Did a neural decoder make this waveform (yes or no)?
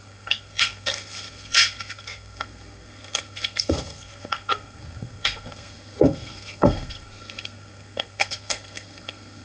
yes